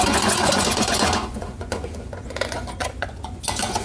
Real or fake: fake